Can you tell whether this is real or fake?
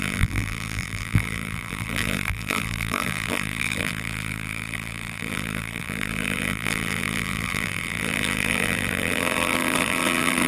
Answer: fake